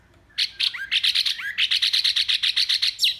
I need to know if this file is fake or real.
real